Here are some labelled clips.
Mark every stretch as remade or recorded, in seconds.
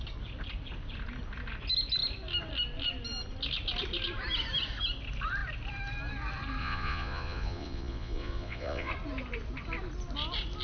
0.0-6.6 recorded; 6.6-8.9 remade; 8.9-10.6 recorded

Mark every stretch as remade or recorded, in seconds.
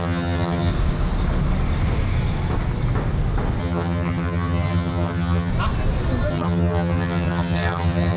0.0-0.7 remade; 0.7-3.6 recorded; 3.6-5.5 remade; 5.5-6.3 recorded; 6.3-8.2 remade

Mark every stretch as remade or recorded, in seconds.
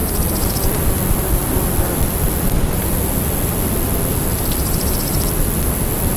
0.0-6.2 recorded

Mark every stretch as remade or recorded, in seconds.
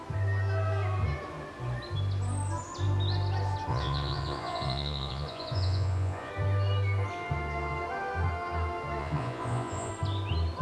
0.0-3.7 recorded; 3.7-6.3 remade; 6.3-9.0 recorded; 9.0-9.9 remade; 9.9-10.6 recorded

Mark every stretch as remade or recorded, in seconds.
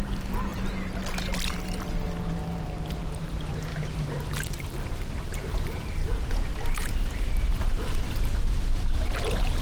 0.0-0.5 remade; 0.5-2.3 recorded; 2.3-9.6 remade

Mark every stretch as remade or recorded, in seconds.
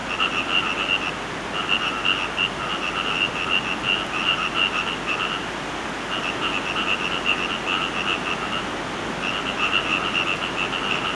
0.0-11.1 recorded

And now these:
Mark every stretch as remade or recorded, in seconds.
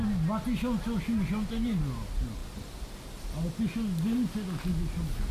0.0-5.3 recorded